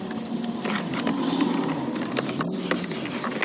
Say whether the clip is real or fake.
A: real